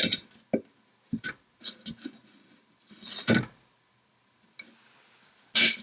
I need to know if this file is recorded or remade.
recorded